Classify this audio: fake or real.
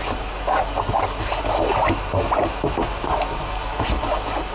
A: real